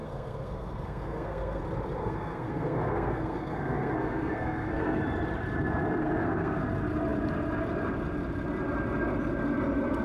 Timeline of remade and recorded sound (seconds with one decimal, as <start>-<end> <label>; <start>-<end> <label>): 0.0-1.6 remade; 1.6-2.0 recorded; 2.0-5.0 remade; 5.0-6.0 recorded; 6.0-6.6 remade; 6.6-10.0 recorded

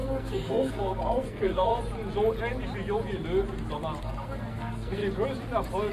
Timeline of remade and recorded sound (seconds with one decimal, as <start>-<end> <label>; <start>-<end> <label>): 0.0-1.7 remade; 1.7-4.0 recorded; 4.0-5.0 remade; 5.0-5.9 recorded

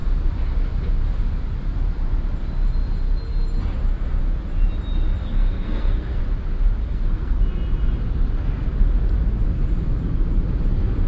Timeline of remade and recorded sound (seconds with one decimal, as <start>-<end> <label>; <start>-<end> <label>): 0.0-5.2 recorded; 5.2-6.2 remade; 6.2-6.8 recorded; 6.8-7.4 remade; 7.4-11.1 recorded

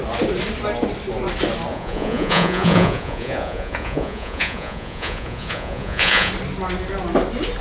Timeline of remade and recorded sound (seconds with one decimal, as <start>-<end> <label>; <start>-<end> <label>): 0.0-1.7 recorded; 1.7-6.3 remade; 6.3-7.6 recorded

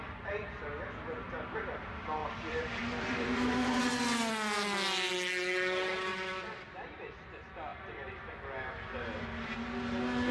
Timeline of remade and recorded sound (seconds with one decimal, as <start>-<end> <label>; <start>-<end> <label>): 0.0-2.2 recorded; 2.2-3.8 remade; 3.8-6.1 recorded; 6.1-7.3 remade; 7.3-7.7 recorded; 7.7-8.3 remade; 8.3-10.3 recorded

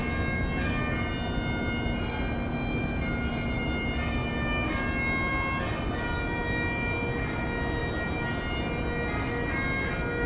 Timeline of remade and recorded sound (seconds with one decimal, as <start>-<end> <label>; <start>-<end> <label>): 0.0-10.3 recorded

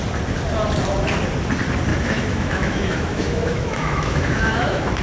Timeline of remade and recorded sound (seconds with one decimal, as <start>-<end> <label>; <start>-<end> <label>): 0.0-1.9 recorded; 1.9-5.0 remade

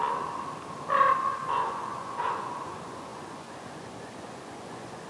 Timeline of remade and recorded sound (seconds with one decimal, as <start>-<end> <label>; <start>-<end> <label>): 0.0-1.4 recorded; 1.4-5.1 remade